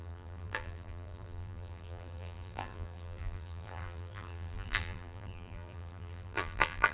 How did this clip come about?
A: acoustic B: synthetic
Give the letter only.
B